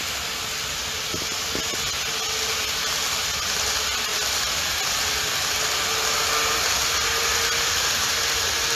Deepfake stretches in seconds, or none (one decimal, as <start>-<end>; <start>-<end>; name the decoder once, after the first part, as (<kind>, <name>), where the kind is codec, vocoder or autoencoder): none